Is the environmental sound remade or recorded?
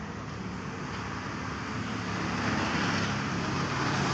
recorded